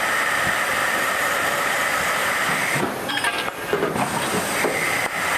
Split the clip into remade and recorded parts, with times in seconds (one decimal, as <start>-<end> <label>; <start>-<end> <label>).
0.0-0.8 recorded; 0.8-1.8 remade; 1.8-2.2 recorded; 2.2-3.1 remade; 3.1-5.4 recorded